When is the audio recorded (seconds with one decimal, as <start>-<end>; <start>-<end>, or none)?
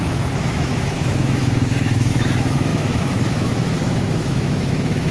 none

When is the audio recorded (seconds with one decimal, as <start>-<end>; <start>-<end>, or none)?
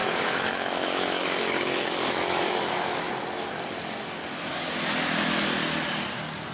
3.1-6.5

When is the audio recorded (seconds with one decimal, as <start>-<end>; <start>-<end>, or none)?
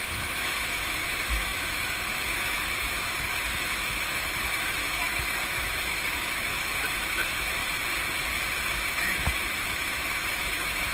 7.6-8.7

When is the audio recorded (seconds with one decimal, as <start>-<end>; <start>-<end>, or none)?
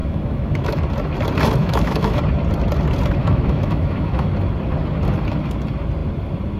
0.8-1.6; 2.2-3.2; 4.3-6.6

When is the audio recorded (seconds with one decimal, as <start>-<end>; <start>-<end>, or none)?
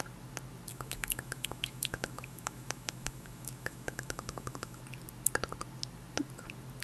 0.0-0.7; 4.8-6.8